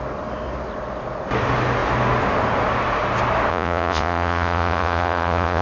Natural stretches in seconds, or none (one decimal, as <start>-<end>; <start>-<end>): 0.0-3.5